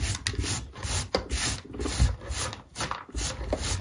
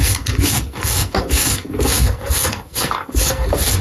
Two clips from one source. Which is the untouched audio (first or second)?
first